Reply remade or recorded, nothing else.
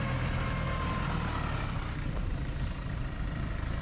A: recorded